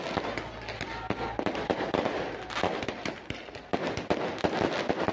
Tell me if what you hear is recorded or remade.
recorded